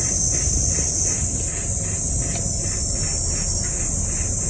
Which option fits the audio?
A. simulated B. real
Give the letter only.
B